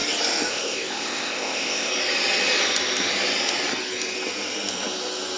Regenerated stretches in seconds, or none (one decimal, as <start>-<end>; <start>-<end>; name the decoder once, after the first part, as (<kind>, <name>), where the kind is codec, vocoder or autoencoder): 0.5-1.9 (codec, ZipCodec)